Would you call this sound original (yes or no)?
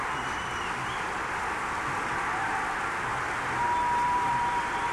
yes